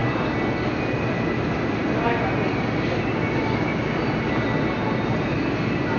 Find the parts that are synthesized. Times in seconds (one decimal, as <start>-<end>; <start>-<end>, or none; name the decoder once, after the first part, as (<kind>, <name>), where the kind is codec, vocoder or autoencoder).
none